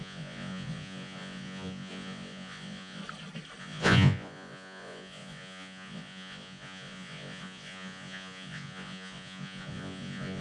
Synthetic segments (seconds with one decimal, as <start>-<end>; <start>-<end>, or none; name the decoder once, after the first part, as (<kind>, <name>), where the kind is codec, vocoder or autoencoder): 0.0-3.0 (vocoder, Vocos); 3.6-10.4